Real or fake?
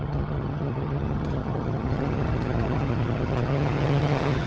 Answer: fake